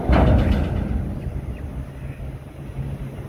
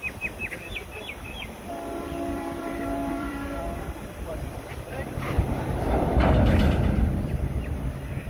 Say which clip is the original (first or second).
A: first